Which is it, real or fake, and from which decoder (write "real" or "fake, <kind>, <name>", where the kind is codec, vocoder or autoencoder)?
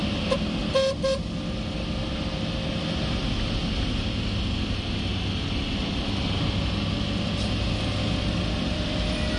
real